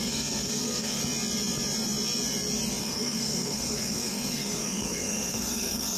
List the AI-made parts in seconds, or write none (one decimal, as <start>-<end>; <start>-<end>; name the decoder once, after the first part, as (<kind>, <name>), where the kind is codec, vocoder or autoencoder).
0.0-1.0 (codec, SNAC); 2.8-6.0